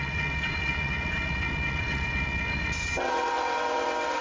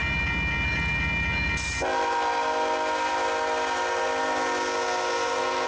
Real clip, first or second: second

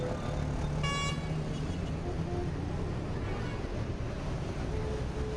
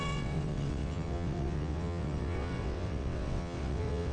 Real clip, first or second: first